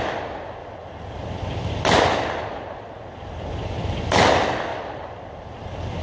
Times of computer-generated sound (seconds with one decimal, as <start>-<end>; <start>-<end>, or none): 0.6-2.0; 4.7-6.0